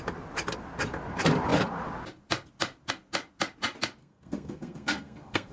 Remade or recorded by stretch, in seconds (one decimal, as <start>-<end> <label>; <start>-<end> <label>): 0.0-4.0 recorded; 4.0-5.5 remade